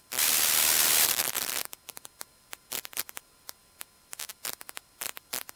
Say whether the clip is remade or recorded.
recorded